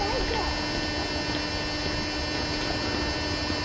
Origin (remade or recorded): recorded